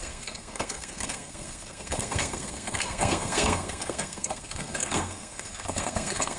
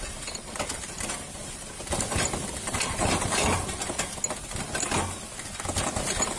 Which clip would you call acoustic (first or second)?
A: second